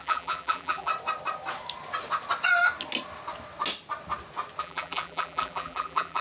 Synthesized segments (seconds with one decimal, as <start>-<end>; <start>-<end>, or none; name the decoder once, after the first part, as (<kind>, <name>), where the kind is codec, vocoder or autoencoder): 0.0-0.9 (vocoder, BigVGAN v2); 4.6-6.2